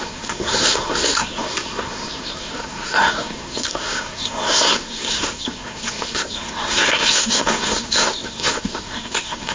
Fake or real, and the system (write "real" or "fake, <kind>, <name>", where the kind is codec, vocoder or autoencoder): fake, codec, SNAC